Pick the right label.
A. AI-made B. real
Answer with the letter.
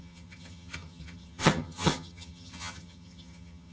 A